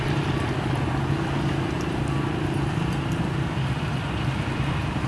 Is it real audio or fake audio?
real